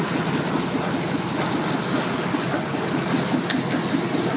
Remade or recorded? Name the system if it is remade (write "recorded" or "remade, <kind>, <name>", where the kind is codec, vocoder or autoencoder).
recorded